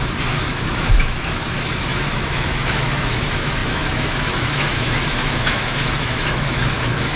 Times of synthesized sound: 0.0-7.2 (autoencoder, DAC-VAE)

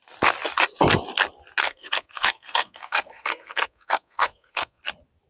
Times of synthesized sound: 1.6-4.8 (codec, SNAC)